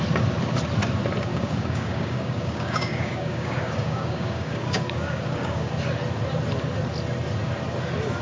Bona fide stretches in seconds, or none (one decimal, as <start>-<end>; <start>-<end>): 0.0-1.3; 5.7-8.2